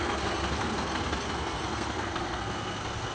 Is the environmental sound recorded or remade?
remade